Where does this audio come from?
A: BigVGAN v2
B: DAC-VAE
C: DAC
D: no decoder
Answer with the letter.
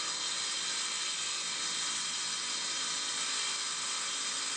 D